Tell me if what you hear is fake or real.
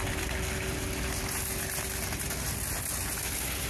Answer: real